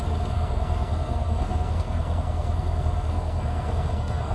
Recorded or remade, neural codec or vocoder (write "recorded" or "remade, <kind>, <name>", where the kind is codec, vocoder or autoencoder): remade, codec, SNAC